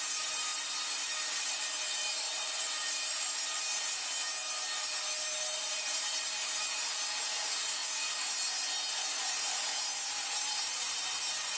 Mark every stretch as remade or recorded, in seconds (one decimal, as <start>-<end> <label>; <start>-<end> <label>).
0.0-0.5 remade; 0.5-5.6 recorded; 5.6-7.8 remade; 7.8-8.9 recorded; 8.9-11.6 remade